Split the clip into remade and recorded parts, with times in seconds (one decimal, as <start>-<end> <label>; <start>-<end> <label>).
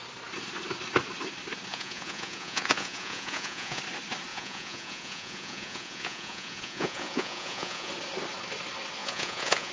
0.0-1.7 recorded; 1.7-3.8 remade; 3.8-4.3 recorded; 4.3-7.9 remade; 7.9-9.0 recorded; 9.0-9.7 remade